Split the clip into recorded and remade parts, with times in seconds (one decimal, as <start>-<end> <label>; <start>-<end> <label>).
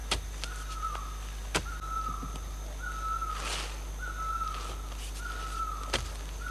0.0-6.5 recorded